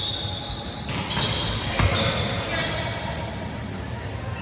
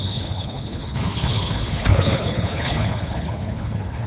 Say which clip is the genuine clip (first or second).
first